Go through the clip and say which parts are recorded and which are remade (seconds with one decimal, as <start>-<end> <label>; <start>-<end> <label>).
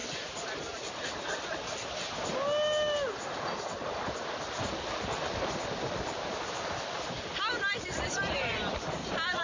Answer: 0.0-9.4 recorded